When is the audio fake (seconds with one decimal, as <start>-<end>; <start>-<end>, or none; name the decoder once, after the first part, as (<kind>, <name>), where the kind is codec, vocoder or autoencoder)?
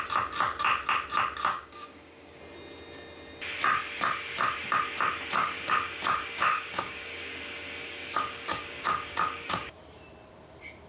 1.5-2.4 (codec, DAC); 5.4-9.8